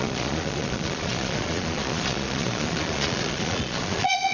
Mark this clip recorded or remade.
remade